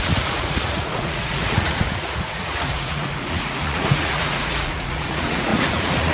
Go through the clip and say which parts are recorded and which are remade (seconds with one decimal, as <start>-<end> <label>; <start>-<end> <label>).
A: 0.0-6.1 remade